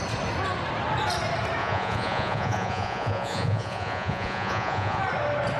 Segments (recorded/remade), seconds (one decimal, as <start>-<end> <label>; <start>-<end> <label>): 0.0-1.6 recorded; 1.6-5.0 remade; 5.0-5.6 recorded